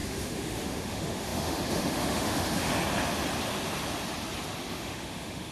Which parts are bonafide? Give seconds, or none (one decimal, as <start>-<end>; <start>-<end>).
2.7-4.7